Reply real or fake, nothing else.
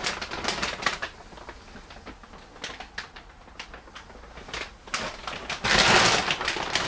real